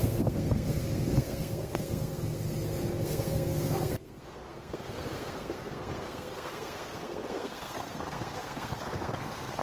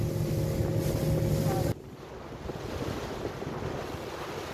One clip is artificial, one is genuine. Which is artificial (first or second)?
first